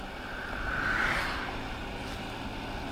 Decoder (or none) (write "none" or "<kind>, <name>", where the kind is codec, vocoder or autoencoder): none